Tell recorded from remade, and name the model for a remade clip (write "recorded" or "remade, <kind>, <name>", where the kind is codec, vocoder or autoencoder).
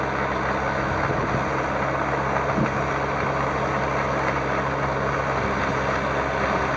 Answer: recorded